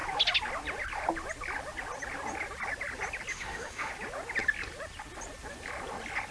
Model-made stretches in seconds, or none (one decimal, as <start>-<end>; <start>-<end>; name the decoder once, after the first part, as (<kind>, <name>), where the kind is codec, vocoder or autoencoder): 3.3-3.9 (autoencoder, DAC-VAE)